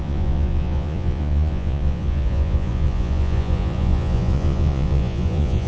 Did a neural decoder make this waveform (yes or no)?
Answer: yes